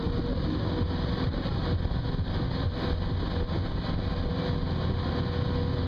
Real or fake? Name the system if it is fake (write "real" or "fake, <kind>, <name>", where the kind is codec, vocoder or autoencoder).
real